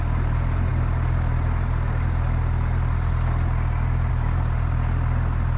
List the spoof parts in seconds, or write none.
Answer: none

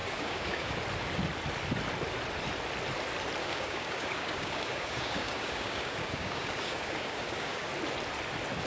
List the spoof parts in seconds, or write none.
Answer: 0.0-0.8; 3.4-7.7

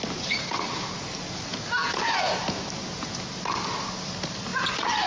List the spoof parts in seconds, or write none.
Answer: none

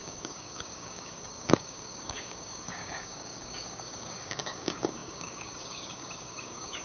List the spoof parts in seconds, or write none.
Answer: 0.0-6.8

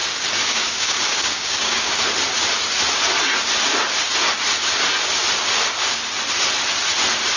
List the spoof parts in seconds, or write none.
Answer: 0.0-2.0